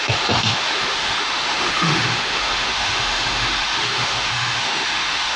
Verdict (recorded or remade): remade